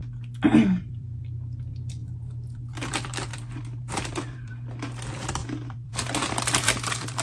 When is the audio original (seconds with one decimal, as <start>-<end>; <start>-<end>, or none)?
0.0-0.8